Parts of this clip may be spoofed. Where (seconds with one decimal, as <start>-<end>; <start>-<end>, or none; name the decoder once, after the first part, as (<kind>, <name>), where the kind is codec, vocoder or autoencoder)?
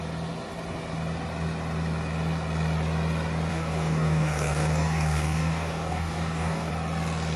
3.5-6.7 (codec, DAC)